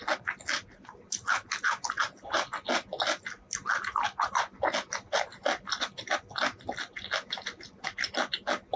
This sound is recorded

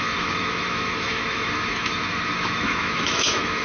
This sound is remade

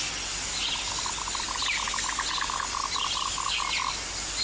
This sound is recorded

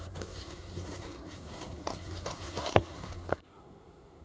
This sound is remade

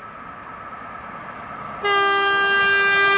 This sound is recorded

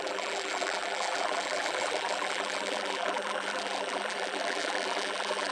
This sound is remade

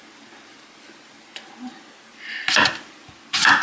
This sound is recorded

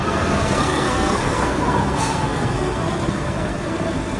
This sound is remade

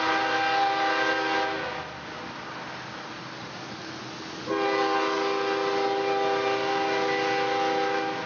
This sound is recorded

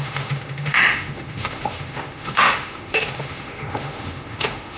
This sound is remade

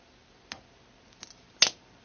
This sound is recorded